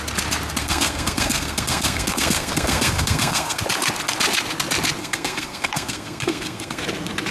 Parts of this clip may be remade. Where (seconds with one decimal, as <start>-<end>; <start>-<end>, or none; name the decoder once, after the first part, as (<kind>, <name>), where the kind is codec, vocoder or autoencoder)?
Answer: 0.6-3.6 (codec, SNAC); 5.0-6.8